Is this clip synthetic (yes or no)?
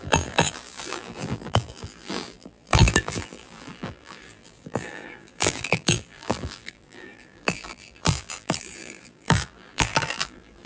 yes